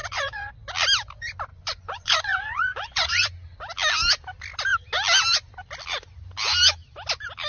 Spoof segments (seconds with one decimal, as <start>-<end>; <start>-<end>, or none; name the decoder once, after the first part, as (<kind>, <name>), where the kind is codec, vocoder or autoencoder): 0.0-0.5 (vocoder, Vocos); 1.5-3.3